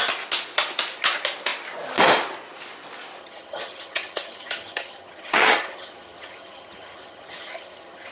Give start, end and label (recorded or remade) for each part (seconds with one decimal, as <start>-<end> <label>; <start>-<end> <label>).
0.0-3.2 recorded; 3.2-8.1 remade

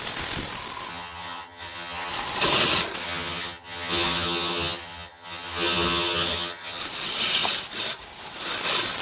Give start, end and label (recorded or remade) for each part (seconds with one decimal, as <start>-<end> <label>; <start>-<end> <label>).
0.0-0.9 recorded; 0.9-2.1 remade; 2.1-3.0 recorded; 3.0-6.8 remade; 6.8-9.0 recorded

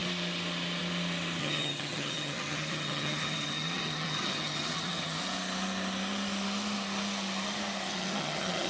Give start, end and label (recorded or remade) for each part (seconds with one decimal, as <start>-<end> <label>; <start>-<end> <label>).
0.0-1.4 recorded; 1.4-5.2 remade; 5.2-7.9 recorded; 7.9-8.7 remade